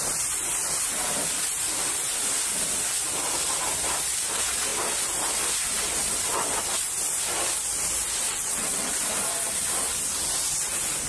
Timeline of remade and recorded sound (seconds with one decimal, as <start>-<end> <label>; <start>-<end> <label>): 0.0-8.2 recorded; 8.2-8.9 remade; 8.9-11.1 recorded